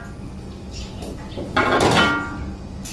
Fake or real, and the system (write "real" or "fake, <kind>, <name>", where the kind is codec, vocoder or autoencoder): real